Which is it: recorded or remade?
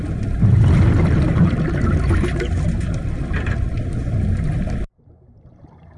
recorded